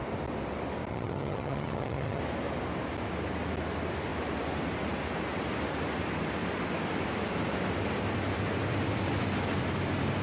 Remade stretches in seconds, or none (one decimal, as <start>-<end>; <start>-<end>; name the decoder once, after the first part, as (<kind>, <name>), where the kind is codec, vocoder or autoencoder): 0.9-2.2 (vocoder, HiFi-GAN)